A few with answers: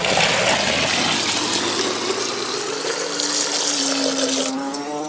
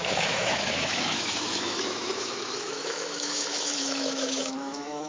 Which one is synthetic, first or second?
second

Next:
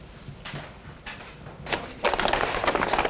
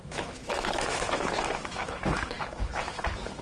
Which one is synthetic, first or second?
second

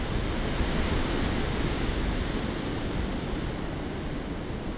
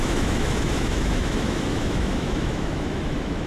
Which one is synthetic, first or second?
second